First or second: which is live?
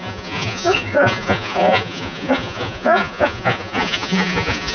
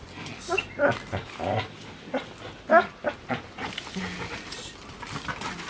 second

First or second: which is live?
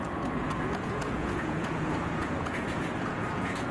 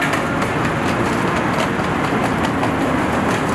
second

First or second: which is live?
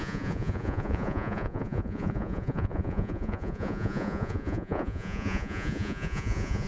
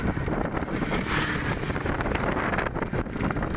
second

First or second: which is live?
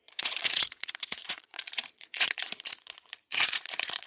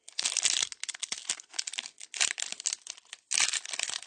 second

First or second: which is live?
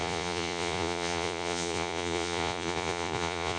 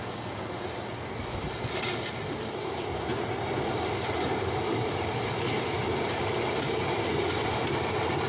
second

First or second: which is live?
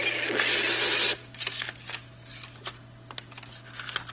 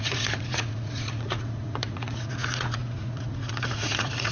first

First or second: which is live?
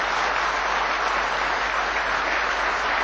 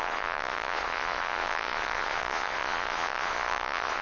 first